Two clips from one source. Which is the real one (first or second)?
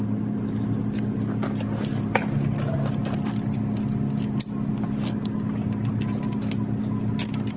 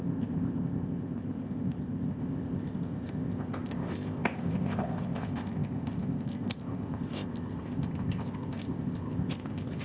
first